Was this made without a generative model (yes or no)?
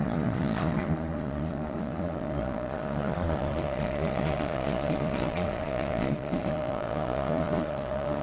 no